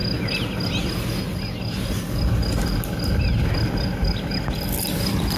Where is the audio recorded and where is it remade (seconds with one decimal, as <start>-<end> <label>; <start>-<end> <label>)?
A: 0.0-5.4 recorded